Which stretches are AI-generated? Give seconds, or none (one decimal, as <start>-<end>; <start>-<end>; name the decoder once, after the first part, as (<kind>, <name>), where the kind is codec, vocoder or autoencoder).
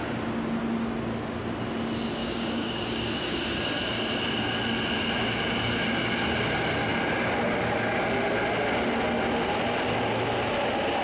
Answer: 2.2-3.4 (codec, DAC)